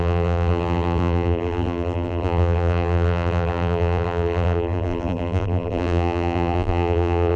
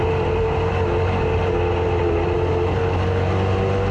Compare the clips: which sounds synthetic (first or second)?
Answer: first